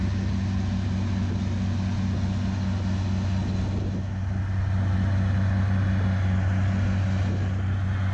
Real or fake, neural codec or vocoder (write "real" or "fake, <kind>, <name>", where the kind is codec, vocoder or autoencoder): real